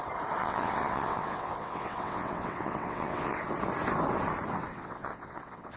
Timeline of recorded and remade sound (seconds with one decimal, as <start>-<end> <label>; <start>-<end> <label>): 0.0-0.4 recorded; 0.4-3.4 remade; 3.4-4.7 recorded; 4.7-5.8 remade